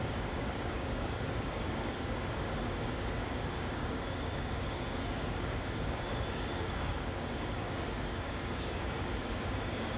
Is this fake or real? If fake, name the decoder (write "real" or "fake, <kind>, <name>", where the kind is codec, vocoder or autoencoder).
fake, codec, DAC